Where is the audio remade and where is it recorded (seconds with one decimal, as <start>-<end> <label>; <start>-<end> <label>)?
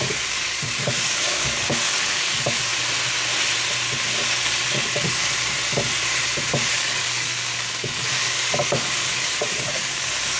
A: 0.0-2.7 remade; 2.7-6.7 recorded; 6.7-10.4 remade